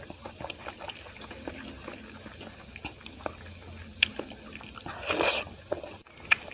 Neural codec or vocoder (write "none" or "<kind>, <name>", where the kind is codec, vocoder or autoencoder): none